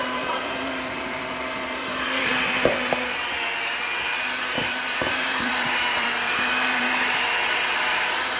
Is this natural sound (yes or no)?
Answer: no